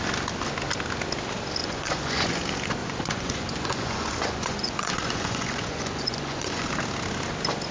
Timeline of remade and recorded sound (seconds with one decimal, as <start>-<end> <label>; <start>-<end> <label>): 0.0-1.6 recorded; 1.6-2.4 remade; 2.4-2.8 recorded; 2.8-6.7 remade; 6.7-7.7 recorded